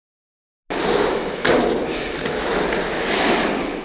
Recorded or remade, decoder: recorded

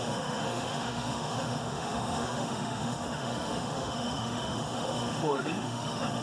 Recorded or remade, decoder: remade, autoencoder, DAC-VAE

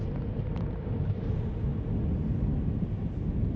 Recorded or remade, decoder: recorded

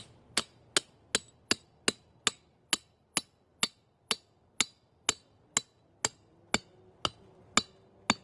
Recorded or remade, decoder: recorded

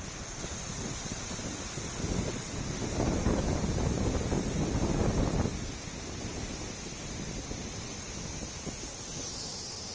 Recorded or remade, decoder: recorded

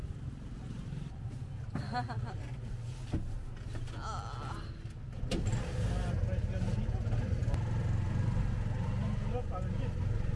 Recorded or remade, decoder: recorded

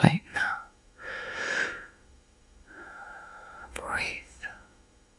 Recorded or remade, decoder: remade, autoencoder, DAC-VAE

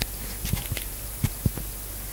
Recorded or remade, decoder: recorded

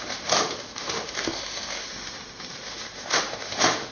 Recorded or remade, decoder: remade, autoencoder, DAC-VAE